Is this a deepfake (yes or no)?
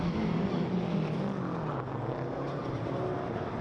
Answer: no